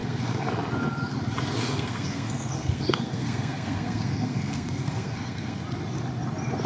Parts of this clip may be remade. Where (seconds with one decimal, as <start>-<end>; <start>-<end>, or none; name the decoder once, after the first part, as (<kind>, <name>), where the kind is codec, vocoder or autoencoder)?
0.0-0.5 (codec, SNAC); 1.6-5.6